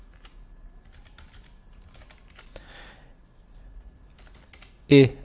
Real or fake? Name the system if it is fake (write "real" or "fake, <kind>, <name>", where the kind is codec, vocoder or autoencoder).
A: real